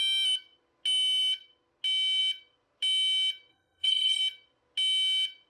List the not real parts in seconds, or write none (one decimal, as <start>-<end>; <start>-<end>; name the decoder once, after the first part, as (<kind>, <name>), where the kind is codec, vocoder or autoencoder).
3.5-4.2 (codec, SNAC)